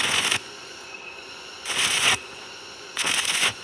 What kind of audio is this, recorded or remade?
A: remade